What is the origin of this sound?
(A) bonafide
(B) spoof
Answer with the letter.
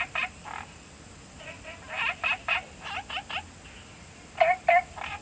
A